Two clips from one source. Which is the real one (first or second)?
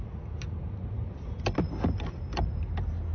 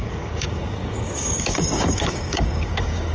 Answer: first